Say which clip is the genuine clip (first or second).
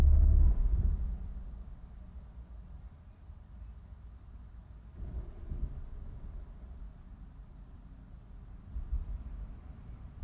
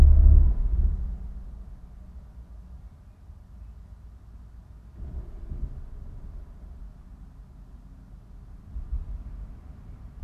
second